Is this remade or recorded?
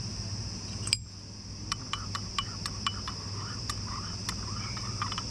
recorded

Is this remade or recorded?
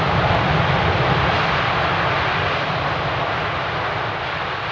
recorded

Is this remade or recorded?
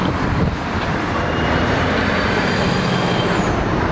remade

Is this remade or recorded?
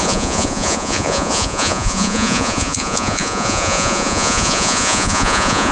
remade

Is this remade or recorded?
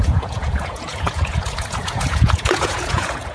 remade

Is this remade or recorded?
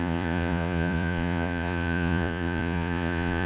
remade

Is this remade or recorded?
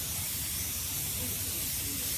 recorded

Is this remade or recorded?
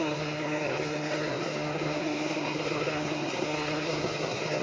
remade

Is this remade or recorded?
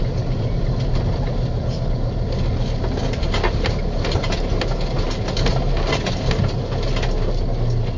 recorded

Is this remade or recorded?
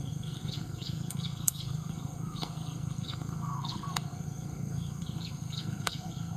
remade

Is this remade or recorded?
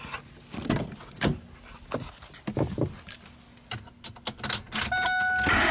recorded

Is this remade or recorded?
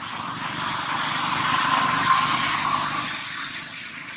recorded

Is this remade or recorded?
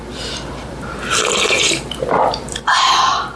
remade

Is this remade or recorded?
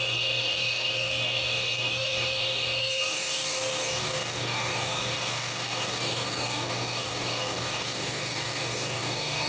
remade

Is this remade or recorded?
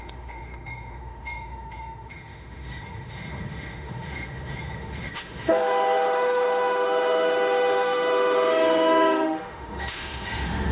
remade